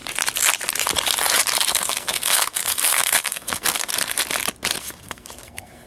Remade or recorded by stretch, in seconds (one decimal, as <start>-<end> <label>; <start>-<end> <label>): 0.0-1.7 recorded; 1.7-3.9 remade; 3.9-4.8 recorded; 4.8-5.9 remade